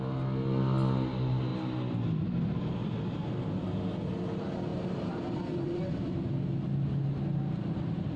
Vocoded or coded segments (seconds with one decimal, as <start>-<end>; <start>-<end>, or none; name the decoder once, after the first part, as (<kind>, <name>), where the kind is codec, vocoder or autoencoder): 4.7-5.8 (vocoder, BigVGAN v2)